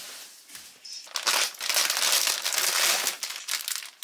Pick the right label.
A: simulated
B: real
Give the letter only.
B